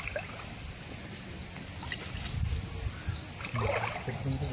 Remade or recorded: recorded